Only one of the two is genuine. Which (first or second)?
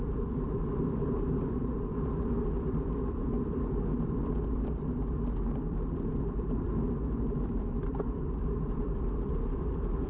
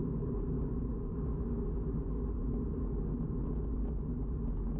second